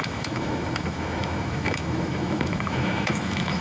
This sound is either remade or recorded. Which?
remade